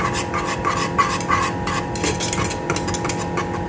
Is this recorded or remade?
recorded